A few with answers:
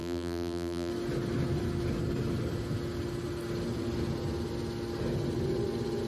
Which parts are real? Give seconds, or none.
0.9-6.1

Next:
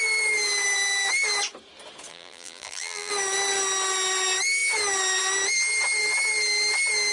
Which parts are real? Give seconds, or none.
0.0-2.1; 3.1-7.1

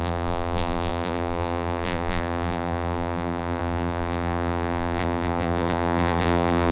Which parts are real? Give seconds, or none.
none

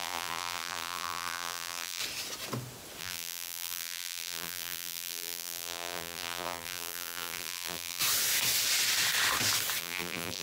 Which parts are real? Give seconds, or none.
2.0-3.0; 8.0-9.8

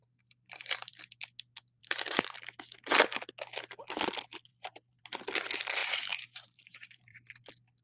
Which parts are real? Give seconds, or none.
0.9-1.8; 2.4-4.5; 5.0-5.8; 7.3-7.8

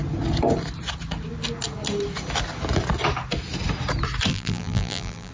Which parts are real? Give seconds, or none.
0.0-4.3